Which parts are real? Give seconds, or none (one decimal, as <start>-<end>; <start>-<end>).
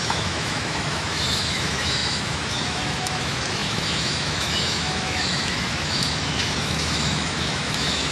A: none